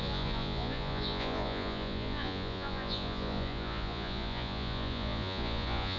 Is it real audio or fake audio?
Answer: fake